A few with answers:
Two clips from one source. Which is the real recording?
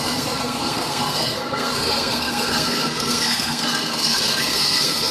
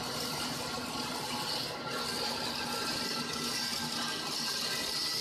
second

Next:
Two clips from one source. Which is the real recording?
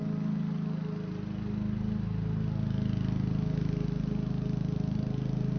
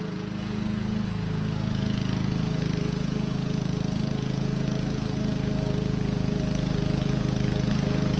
first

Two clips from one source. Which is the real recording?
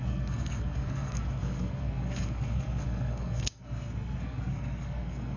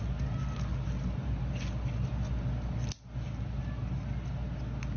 second